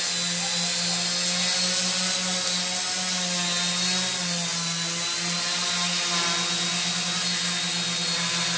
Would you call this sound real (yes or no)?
yes